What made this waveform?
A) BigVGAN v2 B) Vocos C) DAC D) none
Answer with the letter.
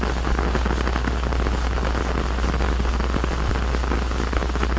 D